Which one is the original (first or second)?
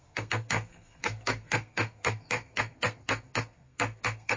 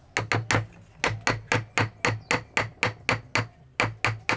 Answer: second